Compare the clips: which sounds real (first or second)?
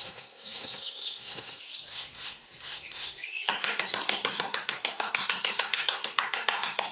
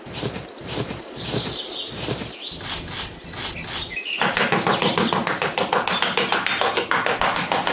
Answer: second